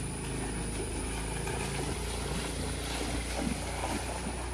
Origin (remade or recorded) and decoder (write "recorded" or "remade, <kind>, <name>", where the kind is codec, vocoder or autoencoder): recorded